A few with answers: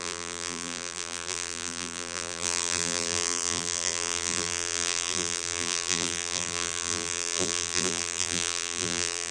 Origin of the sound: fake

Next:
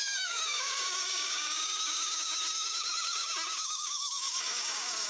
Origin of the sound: fake